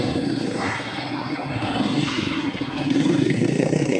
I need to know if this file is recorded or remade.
remade